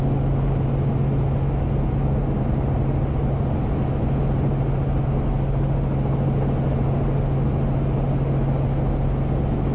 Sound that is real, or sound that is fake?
real